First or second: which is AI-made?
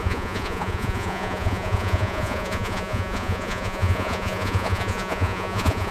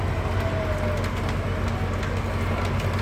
first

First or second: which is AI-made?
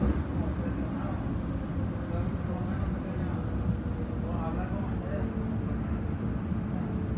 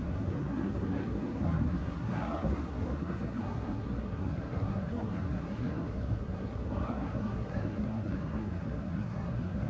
second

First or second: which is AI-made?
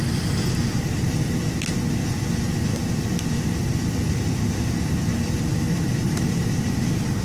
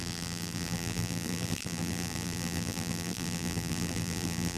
second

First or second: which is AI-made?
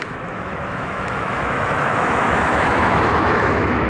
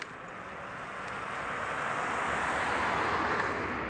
first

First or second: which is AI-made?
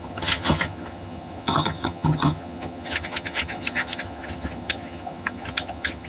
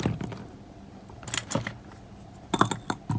first